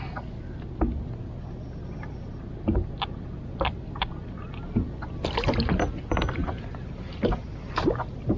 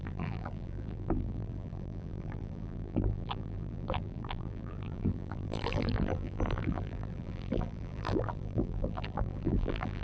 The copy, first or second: second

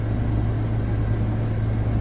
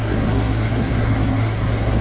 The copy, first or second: second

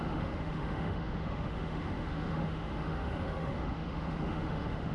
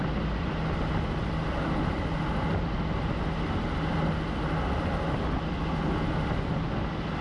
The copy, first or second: first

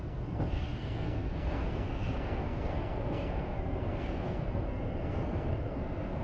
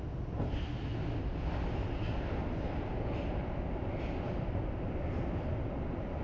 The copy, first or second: first